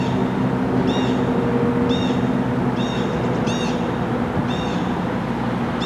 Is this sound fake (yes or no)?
no